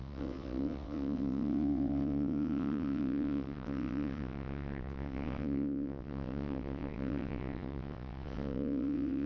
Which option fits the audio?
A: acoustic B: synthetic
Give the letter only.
B